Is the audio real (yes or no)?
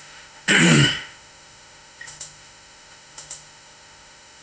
no